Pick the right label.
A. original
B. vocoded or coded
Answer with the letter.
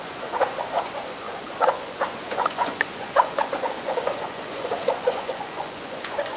B